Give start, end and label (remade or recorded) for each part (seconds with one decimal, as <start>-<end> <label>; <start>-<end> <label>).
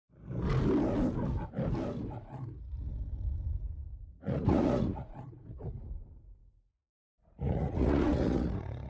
0.0-4.0 recorded; 4.0-5.7 remade; 5.7-6.4 recorded; 6.4-8.9 remade